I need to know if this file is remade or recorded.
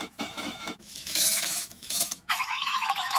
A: remade